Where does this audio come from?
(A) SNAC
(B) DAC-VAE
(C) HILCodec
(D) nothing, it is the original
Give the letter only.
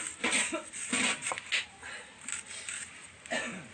D